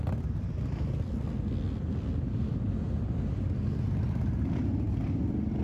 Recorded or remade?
recorded